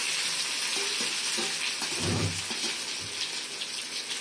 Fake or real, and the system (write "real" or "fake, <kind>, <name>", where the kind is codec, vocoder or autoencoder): real